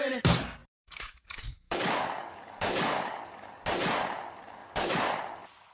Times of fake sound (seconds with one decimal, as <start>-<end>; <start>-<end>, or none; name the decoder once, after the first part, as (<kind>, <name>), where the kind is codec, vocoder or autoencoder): 0.6-3.6 (codec, DAC); 4.6-5.2